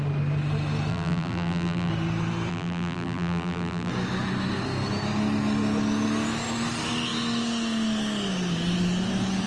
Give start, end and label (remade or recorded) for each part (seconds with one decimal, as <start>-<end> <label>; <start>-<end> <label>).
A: 0.0-0.9 recorded; 0.9-1.9 remade; 1.9-2.5 recorded; 2.5-3.9 remade; 3.9-9.5 recorded